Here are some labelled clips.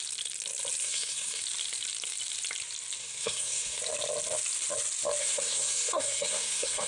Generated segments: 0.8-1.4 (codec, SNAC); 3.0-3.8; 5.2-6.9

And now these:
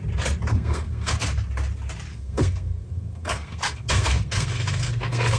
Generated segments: 0.5-1.1 (codec, SNAC); 2.1-5.4

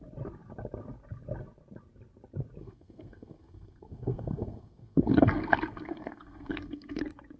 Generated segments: 2.6-7.0 (codec, SNAC)

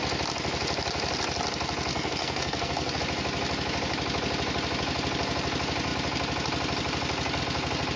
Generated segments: 1.9-3.0 (codec, SNAC)

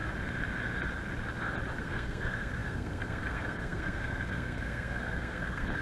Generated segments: 1.8-5.8 (codec, SNAC)

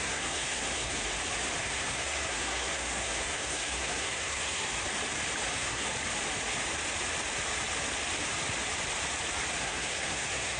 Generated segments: 0.0-1.0 (codec, SNAC); 1.6-4.8; 5.5-5.9; 9.6-10.6